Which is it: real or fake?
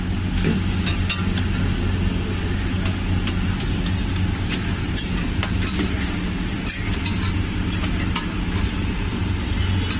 real